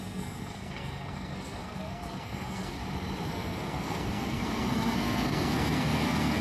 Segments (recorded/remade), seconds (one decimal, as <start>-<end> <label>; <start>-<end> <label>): 0.0-2.8 remade; 2.8-3.3 recorded; 3.3-6.4 remade